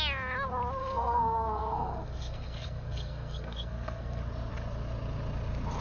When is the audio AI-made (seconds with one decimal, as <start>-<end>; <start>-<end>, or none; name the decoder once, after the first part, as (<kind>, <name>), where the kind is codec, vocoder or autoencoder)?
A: 0.8-4.2 (codec, SNAC)